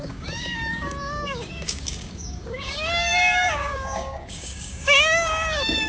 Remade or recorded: remade